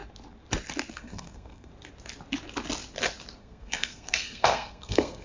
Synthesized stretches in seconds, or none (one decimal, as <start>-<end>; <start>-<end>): 0.9-1.7; 3.4-5.2